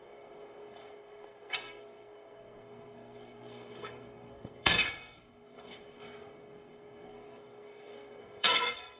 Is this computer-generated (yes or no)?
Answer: yes